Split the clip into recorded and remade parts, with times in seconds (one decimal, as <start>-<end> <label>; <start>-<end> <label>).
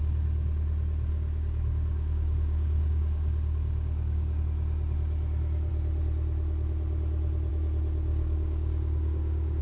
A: 0.0-1.1 recorded; 1.1-4.4 remade; 4.4-8.1 recorded; 8.1-9.6 remade